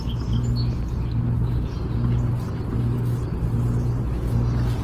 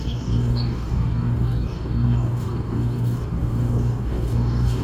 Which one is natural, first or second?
first